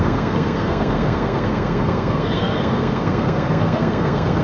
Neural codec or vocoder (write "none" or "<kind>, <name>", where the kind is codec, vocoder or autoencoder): codec, SNAC